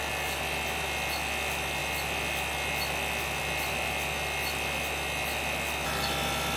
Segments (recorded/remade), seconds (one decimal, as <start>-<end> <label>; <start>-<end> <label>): 0.0-6.6 recorded